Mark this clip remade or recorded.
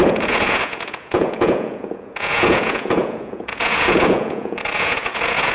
remade